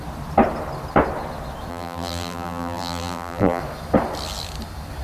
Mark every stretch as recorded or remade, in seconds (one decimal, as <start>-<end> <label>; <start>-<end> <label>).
0.0-1.7 recorded; 1.7-3.6 remade; 3.6-5.0 recorded